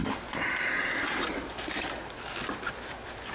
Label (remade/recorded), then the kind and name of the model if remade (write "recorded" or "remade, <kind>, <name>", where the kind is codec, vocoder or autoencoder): recorded